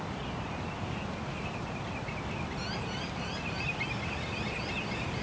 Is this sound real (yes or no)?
yes